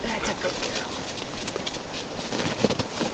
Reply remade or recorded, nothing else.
recorded